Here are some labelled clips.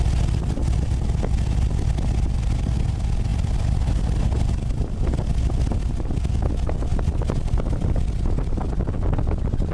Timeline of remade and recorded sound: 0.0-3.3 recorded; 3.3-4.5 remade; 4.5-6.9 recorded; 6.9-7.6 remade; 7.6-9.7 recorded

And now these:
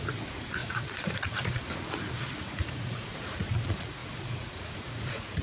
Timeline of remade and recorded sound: 0.0-3.1 remade; 3.1-3.6 recorded; 3.6-5.4 remade

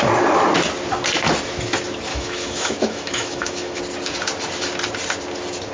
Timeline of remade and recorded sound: 0.0-2.1 recorded; 2.1-3.8 remade; 3.8-5.7 recorded